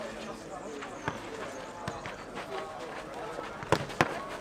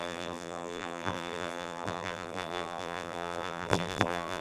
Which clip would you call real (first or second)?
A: first